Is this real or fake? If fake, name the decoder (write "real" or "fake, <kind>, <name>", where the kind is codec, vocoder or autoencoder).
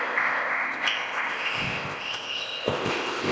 fake, codec, ZipCodec